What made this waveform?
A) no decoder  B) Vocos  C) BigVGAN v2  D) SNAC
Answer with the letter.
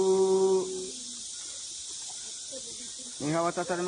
A